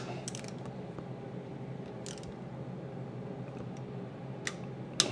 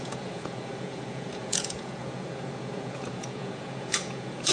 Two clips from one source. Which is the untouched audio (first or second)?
first